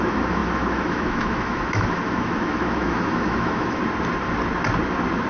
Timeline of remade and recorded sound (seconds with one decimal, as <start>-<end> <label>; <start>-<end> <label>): 0.0-3.8 remade; 3.8-5.3 recorded